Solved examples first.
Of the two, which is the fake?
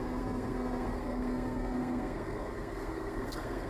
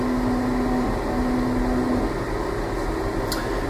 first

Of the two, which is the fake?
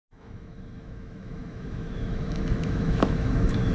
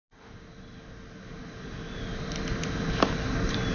first